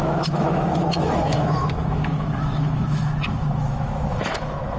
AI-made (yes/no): yes